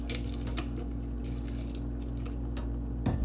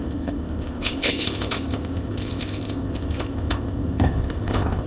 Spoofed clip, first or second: second